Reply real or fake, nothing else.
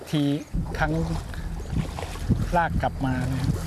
real